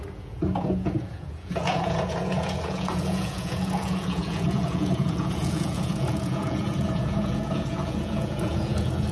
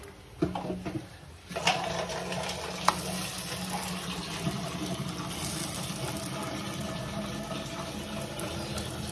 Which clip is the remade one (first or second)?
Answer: first